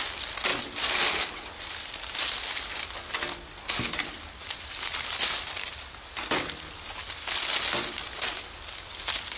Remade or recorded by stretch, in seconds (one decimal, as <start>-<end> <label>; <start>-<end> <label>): 0.0-9.4 recorded